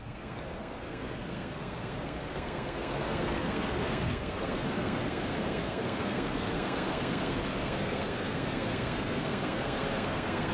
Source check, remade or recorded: remade